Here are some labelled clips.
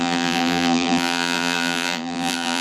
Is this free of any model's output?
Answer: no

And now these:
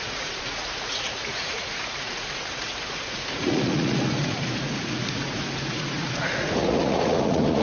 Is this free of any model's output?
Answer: no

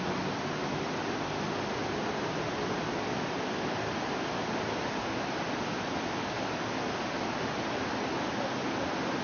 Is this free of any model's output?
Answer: yes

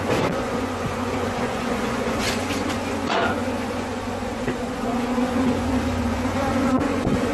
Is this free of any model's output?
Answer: no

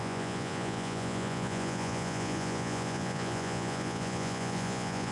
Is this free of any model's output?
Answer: no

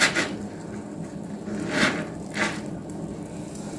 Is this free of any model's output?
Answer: yes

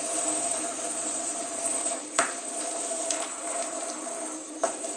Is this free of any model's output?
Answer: no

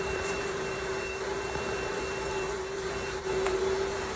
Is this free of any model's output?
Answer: no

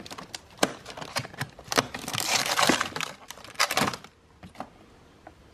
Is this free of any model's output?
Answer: no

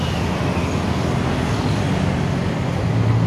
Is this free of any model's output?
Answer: yes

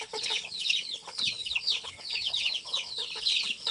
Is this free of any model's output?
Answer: no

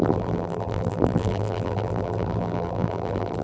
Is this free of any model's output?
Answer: no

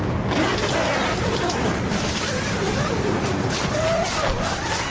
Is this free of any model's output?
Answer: yes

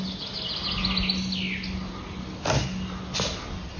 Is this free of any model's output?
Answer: yes